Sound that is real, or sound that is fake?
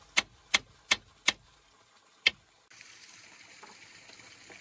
real